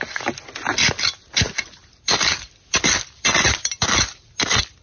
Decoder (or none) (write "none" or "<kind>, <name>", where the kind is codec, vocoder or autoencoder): none